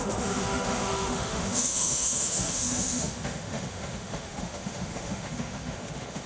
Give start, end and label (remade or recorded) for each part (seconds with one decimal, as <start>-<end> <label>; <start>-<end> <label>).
0.0-6.3 remade

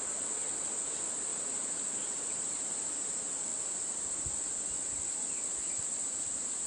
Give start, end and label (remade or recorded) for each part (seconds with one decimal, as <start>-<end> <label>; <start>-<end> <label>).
0.0-6.7 recorded

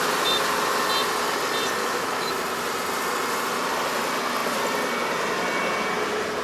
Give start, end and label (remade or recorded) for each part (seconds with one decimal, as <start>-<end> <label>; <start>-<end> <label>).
0.0-1.8 recorded; 1.8-2.3 remade; 2.3-6.4 recorded

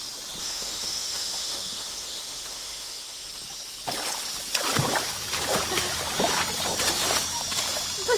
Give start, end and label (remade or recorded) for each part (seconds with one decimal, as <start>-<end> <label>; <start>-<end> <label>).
0.0-0.4 recorded; 0.4-3.4 remade; 3.4-8.2 recorded

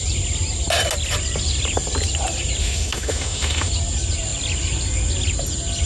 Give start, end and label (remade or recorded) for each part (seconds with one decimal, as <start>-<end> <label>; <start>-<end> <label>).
0.0-2.6 recorded; 2.6-3.7 remade; 3.7-5.9 recorded

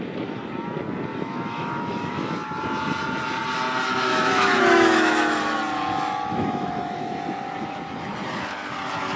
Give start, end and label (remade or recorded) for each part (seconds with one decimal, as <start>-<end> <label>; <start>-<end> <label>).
0.0-1.1 recorded; 1.1-2.3 remade; 2.3-4.1 recorded; 4.1-5.6 remade; 5.6-6.3 recorded; 6.3-7.1 remade; 7.1-9.2 recorded

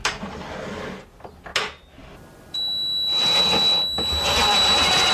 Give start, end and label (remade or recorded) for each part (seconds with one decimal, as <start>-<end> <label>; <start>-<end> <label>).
0.0-5.1 recorded